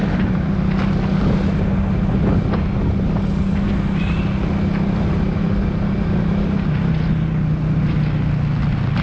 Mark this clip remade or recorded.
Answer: recorded